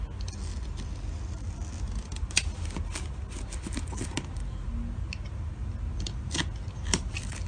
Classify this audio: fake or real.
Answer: real